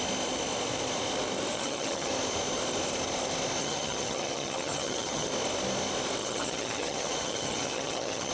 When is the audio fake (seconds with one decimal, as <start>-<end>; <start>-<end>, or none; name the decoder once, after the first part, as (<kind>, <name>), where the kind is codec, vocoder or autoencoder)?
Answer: 1.5-2.1 (vocoder, HiFi-GAN); 3.6-5.3; 6.2-8.3